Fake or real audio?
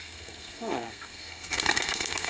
fake